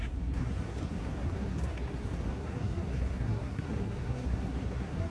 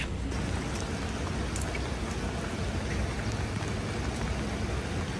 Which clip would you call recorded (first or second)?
second